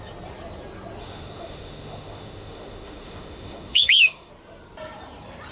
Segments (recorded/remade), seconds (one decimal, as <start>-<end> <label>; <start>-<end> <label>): 0.0-1.0 recorded; 1.0-4.3 remade; 4.3-5.5 recorded